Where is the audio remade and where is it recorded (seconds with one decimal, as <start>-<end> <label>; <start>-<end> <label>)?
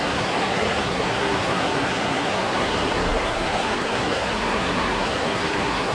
0.0-5.9 remade